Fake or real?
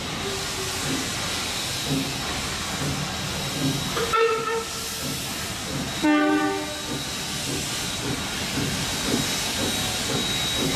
real